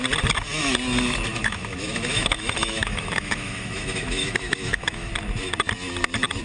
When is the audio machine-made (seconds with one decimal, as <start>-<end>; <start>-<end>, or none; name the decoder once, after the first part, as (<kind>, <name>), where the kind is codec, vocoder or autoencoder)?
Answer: 1.3-5.1 (autoencoder, DAC-VAE)